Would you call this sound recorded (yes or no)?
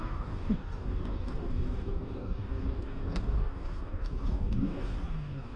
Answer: no